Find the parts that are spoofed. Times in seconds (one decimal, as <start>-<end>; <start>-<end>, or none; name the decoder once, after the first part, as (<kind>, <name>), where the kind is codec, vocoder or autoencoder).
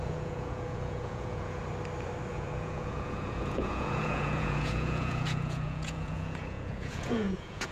0.0-1.6 (vocoder, Vocos); 2.3-7.7